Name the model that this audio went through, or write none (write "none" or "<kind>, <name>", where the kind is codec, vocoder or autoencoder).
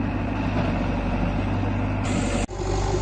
none